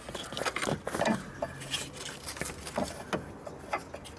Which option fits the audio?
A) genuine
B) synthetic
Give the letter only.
A